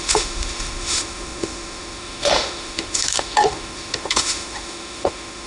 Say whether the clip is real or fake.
fake